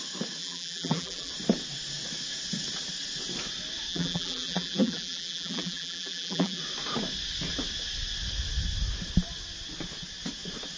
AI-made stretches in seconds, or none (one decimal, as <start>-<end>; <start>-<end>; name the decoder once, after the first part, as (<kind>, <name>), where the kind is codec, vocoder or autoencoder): 0.4-1.3 (vocoder, BigVGAN v2); 3.9-6.6